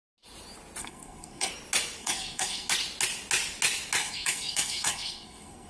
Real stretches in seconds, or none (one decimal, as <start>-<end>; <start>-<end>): 0.0-0.8; 1.5-2.0; 2.7-4.0